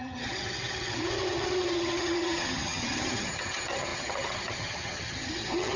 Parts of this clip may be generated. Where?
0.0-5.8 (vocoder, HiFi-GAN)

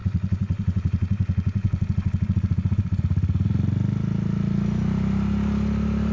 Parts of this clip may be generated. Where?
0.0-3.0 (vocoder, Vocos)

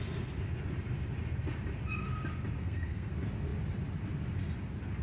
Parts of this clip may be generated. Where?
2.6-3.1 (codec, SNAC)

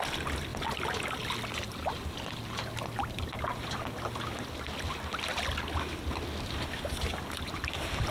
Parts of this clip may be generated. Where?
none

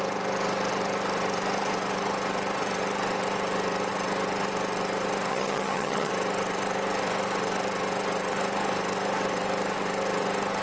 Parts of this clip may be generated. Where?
5.3-6.1 (vocoder, HiFi-GAN)

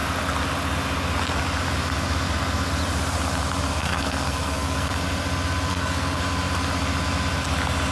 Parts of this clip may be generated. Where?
3.8-4.9 (codec, SNAC); 5.7-6.2